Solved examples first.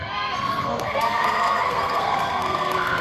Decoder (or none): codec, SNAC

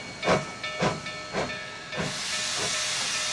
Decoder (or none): none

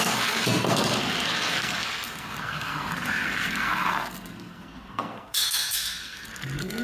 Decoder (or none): codec, SNAC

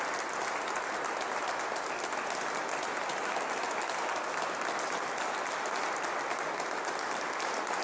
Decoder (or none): none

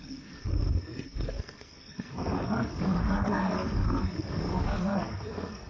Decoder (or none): codec, SNAC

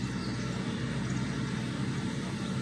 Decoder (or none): none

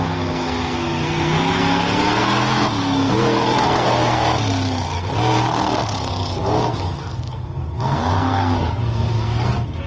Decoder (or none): codec, SNAC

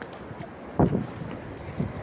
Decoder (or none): none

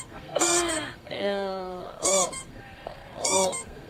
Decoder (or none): codec, SNAC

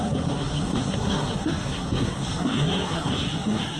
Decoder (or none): codec, SNAC